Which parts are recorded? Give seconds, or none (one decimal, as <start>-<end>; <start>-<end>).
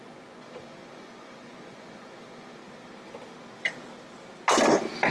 2.6-5.1